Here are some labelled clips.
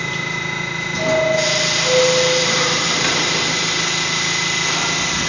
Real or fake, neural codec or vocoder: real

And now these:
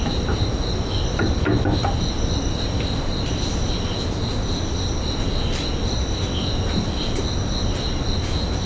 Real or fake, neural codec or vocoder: real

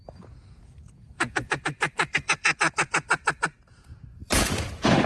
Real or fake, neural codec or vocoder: fake, vocoder, Vocos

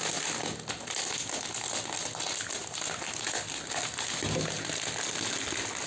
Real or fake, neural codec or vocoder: real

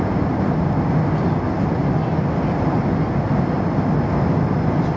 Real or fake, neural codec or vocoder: real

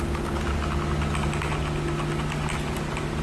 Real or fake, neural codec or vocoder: real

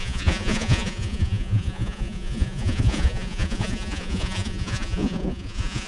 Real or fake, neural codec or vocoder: fake, vocoder, Vocos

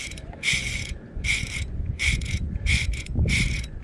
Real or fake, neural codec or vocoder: fake, vocoder, Vocos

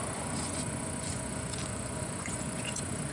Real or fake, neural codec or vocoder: fake, vocoder, Vocos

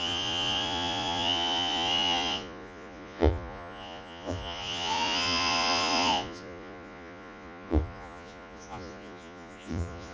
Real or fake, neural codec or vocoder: fake, vocoder, Vocos